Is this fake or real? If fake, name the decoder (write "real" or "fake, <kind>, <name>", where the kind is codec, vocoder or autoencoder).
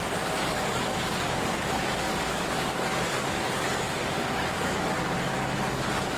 fake, codec, DAC